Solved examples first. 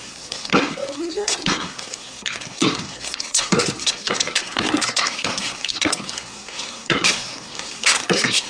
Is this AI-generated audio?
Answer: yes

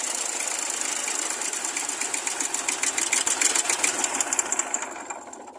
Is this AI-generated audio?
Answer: no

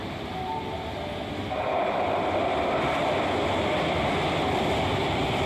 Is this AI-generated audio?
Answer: no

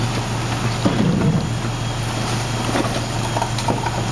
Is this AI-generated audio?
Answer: no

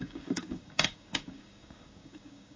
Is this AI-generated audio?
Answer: yes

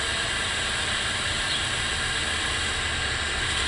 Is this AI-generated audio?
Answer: no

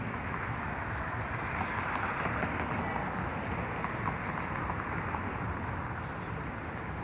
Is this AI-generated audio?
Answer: no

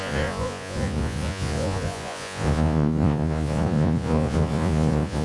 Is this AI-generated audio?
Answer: yes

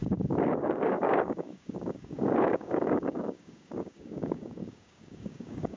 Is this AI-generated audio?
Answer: yes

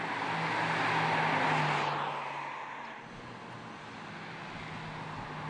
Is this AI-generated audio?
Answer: no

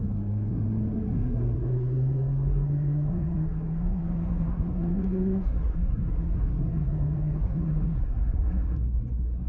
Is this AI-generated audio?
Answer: yes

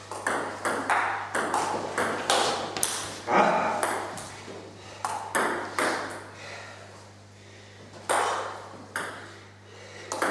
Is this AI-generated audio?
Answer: no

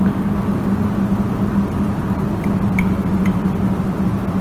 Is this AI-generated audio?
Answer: no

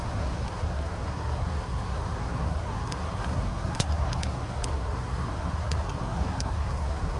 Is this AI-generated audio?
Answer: yes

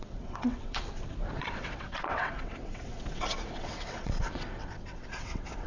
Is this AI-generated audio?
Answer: yes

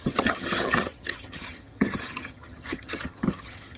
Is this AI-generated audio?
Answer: yes